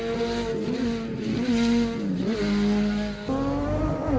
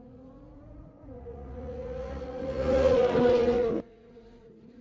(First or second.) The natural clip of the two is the first